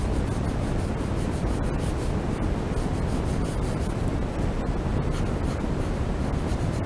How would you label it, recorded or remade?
recorded